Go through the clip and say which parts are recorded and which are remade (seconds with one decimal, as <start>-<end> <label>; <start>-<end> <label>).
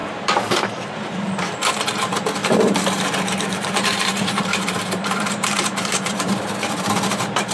0.0-7.5 remade